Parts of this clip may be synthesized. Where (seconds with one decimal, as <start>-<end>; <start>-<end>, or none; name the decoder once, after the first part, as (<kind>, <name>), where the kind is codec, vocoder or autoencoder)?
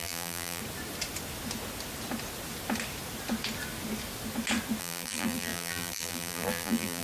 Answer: 0.0-0.6 (vocoder, BigVGAN v2); 4.8-7.0